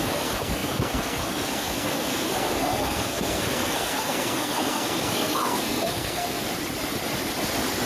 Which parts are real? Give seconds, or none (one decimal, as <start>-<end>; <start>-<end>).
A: 6.5-7.9